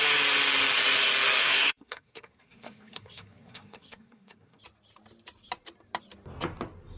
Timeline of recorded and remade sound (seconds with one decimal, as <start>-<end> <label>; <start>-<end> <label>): 0.0-1.4 recorded; 1.4-4.6 remade; 4.6-7.0 recorded

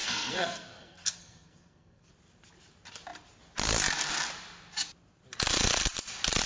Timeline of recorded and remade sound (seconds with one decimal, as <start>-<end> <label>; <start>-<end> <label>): 0.0-2.1 remade; 2.1-6.5 recorded

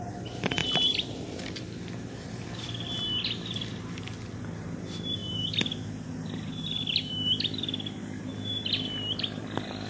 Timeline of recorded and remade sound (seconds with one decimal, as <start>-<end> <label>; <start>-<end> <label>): 0.0-9.9 recorded

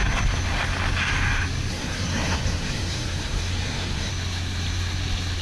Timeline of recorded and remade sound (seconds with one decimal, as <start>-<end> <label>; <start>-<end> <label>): 0.0-1.7 recorded; 1.7-4.1 remade; 4.1-5.4 recorded

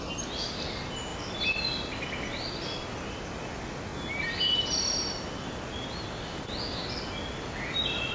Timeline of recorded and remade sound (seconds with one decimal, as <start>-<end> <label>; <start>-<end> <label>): 0.0-8.1 recorded

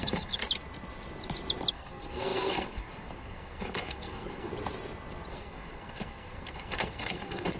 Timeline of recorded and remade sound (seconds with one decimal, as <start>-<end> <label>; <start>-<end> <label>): 0.0-0.4 remade; 0.4-1.7 recorded; 1.7-4.5 remade; 4.5-5.3 recorded; 5.3-7.6 remade